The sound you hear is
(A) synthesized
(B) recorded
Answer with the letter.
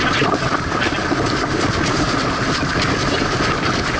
B